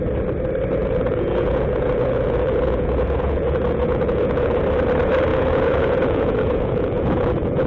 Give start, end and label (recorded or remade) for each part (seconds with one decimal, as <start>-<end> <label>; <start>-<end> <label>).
0.0-0.8 recorded; 0.8-4.6 remade; 4.6-5.3 recorded; 5.3-7.7 remade